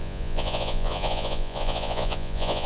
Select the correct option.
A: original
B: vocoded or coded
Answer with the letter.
B